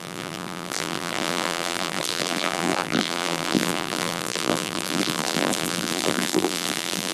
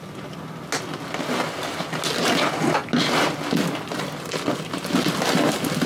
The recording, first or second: second